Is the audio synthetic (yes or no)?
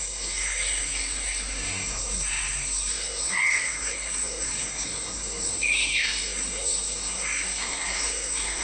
yes